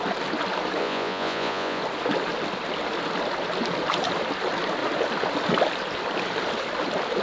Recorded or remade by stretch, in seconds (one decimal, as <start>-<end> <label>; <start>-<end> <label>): 0.0-0.8 recorded; 0.8-1.8 remade; 1.8-7.2 recorded